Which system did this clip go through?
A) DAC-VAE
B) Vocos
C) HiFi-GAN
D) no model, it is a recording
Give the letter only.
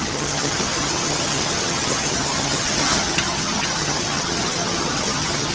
C